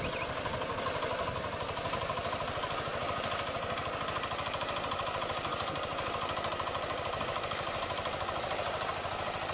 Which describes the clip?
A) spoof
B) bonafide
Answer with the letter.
B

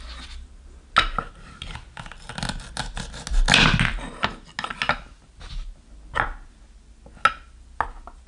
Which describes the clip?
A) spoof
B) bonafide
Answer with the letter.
B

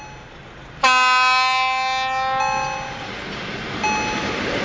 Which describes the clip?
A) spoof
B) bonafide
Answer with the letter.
B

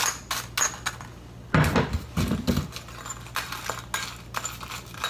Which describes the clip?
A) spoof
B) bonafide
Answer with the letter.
B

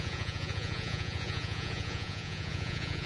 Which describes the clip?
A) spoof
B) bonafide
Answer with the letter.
A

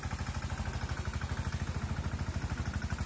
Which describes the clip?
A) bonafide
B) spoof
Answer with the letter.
A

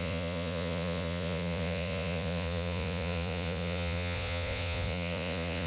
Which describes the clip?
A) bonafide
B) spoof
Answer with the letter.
B